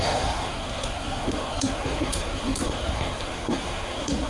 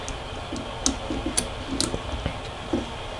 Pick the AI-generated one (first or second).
first